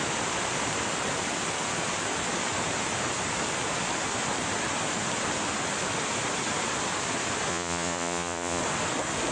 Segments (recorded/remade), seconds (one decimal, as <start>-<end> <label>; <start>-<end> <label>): 0.0-7.5 recorded; 7.5-8.6 remade; 8.6-9.3 recorded